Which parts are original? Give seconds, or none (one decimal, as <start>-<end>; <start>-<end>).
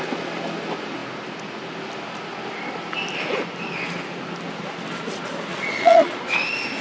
0.0-5.5; 6.2-6.8